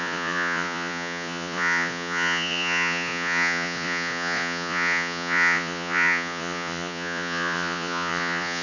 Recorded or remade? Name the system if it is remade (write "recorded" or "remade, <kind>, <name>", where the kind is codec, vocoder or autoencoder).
remade, vocoder, Vocos